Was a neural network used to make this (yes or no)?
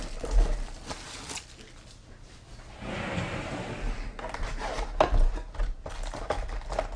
no